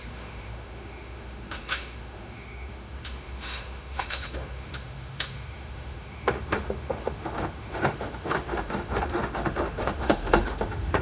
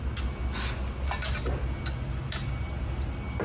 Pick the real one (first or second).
second